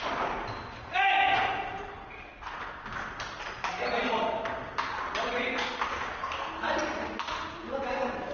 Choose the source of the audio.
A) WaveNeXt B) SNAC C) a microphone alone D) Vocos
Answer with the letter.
C